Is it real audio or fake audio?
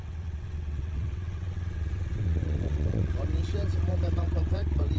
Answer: fake